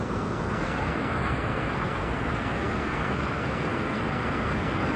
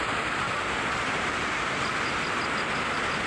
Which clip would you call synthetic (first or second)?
first